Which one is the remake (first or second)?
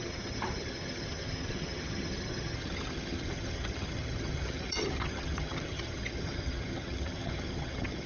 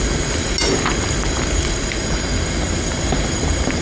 first